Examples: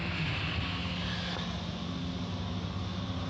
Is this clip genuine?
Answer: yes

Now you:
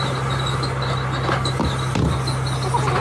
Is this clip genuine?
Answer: yes